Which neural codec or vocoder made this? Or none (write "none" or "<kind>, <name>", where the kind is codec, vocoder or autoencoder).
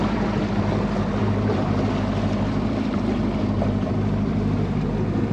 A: vocoder, BigVGAN v2